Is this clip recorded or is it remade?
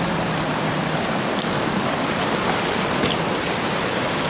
recorded